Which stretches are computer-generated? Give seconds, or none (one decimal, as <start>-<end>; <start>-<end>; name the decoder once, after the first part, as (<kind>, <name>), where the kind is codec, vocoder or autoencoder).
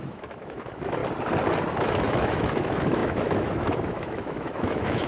0.0-1.0 (autoencoder, DAC-VAE); 1.6-5.1